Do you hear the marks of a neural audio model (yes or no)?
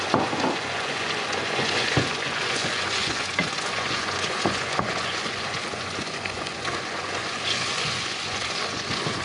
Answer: yes